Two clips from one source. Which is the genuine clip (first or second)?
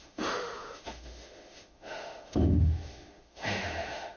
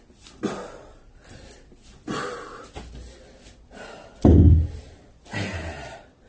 second